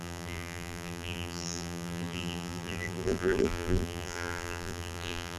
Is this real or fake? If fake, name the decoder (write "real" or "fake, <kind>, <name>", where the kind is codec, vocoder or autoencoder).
fake, vocoder, BigVGAN v2